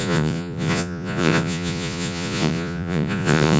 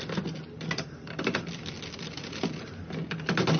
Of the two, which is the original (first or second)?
second